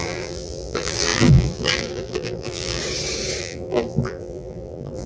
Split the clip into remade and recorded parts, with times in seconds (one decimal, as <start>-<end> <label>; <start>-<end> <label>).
0.0-2.8 remade; 2.8-3.4 recorded; 3.4-5.1 remade